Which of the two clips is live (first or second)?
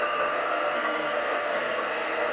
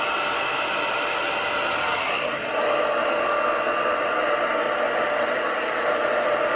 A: second